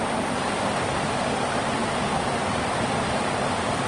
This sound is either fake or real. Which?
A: real